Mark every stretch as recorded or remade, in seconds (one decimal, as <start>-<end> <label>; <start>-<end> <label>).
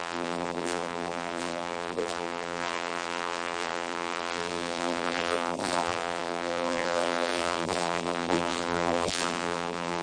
0.0-10.0 remade